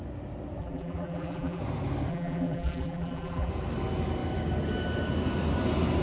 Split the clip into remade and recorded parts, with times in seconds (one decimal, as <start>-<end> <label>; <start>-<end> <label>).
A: 0.0-0.6 recorded; 0.6-1.6 remade; 1.6-2.1 recorded; 2.1-3.5 remade; 3.5-6.0 recorded